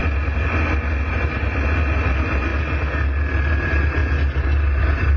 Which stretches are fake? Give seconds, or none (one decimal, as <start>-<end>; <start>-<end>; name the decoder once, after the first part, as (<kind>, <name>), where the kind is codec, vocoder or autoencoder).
1.1-2.5 (vocoder, BigVGAN v2); 3.6-4.0; 4.8-5.2